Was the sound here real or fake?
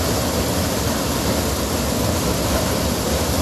real